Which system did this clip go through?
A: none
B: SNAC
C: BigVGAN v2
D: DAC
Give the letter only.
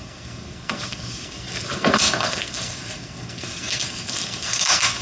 B